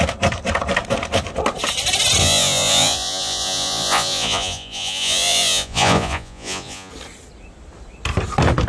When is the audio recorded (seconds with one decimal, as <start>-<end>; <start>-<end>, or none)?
0.0-2.2; 6.9-8.7